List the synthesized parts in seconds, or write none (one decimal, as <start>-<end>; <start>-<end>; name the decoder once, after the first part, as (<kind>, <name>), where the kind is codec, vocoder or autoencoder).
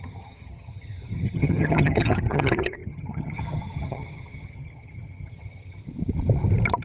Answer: 0.0-5.8 (vocoder, HiFi-GAN)